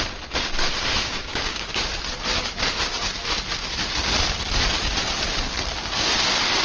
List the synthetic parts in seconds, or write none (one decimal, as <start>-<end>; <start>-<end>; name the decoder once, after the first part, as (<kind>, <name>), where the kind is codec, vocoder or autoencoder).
1.1-1.8 (codec, DAC)